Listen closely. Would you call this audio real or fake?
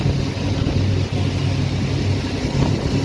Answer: real